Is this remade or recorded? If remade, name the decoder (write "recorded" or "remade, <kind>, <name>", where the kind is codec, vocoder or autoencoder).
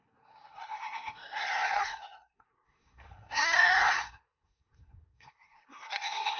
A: remade, codec, SNAC